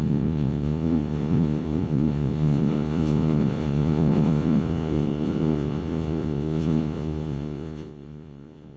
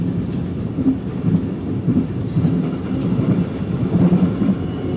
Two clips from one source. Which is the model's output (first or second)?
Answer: first